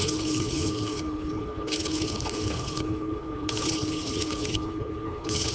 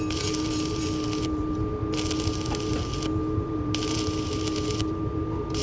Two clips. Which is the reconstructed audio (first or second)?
first